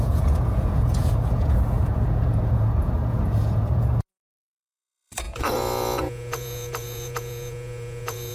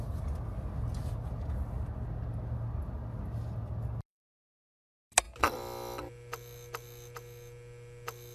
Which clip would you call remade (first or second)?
first